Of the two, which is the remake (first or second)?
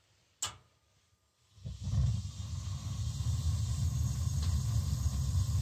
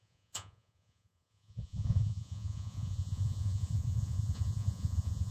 second